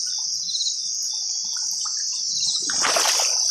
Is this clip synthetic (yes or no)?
no